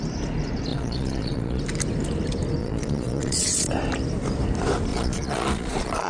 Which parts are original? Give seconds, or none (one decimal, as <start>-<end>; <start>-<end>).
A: 0.0-0.7; 1.6-2.6; 3.7-4.9